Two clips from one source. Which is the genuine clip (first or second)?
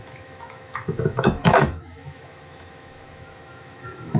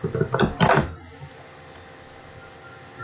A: second